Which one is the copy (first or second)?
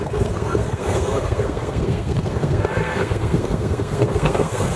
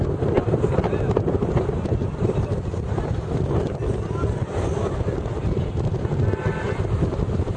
first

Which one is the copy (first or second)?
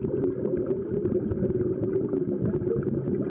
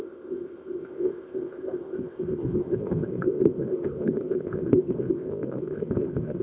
second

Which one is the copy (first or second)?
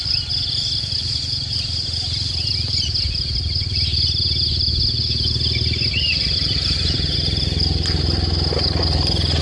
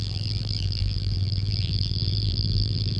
second